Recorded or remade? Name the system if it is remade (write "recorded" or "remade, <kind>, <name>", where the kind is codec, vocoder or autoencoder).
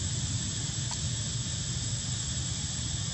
recorded